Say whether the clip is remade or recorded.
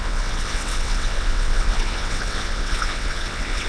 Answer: remade